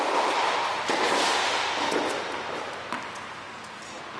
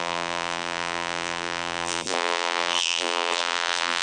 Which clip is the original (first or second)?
first